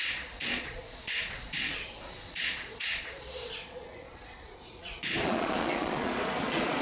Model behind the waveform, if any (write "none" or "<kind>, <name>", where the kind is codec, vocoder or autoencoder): vocoder, Vocos